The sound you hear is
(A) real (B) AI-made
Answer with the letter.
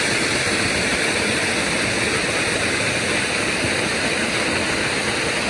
A